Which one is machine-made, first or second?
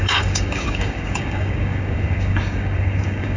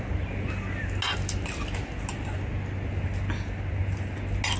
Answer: first